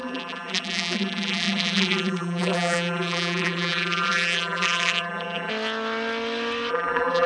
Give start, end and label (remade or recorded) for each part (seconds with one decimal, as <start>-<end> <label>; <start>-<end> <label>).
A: 0.0-5.5 remade; 5.5-6.7 recorded; 6.7-7.3 remade